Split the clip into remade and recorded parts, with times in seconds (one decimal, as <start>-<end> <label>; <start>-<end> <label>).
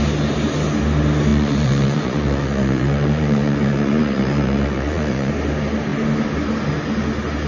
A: 0.0-1.3 recorded; 1.3-5.3 remade; 5.3-7.5 recorded